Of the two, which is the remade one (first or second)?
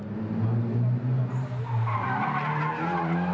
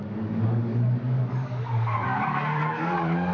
second